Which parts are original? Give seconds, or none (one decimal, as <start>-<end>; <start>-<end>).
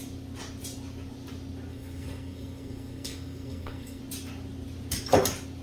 0.0-1.7; 4.0-5.6